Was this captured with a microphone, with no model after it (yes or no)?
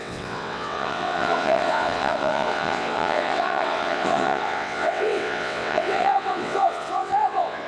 no